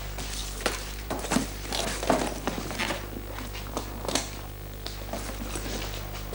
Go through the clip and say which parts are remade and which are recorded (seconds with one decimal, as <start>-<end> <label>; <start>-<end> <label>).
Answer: 0.0-0.4 recorded; 0.4-1.2 remade; 1.2-6.3 recorded